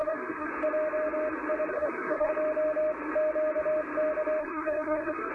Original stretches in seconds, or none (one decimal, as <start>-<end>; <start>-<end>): 0.5-1.7; 2.3-4.4